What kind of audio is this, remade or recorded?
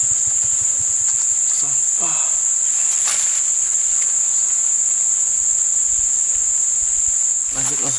recorded